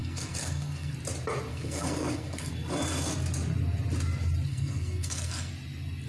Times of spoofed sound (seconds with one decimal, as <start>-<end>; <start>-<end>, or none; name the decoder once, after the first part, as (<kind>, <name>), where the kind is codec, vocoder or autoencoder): 0.0-0.9 (codec, SNAC); 1.5-2.5; 4.5-5.5